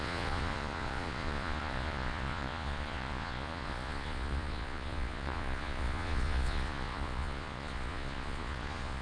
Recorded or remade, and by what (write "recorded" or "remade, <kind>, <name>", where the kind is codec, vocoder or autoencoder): remade, vocoder, Vocos